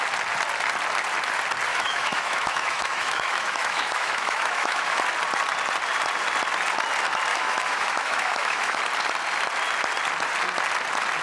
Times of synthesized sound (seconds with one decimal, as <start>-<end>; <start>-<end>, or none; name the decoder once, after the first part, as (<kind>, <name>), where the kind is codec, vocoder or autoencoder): 1.7-5.0 (autoencoder, DAC-VAE); 7.3-8.8